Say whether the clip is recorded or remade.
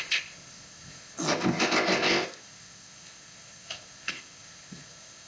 remade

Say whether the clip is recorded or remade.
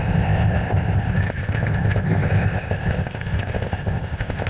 remade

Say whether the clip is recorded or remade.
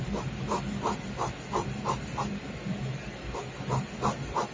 recorded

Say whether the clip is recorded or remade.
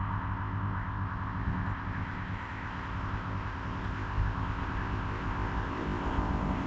remade